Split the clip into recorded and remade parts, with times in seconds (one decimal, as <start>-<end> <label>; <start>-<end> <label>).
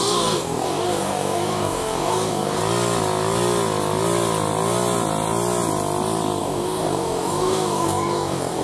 0.0-2.6 remade; 2.6-6.4 recorded; 6.4-8.6 remade